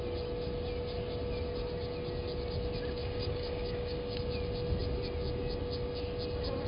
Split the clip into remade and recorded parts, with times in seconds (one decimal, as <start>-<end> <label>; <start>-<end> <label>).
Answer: 0.0-3.0 recorded; 3.0-4.3 remade; 4.3-6.7 recorded